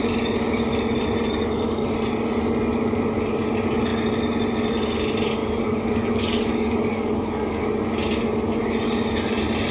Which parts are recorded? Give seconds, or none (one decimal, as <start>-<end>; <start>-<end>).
0.0-5.4; 7.6-9.7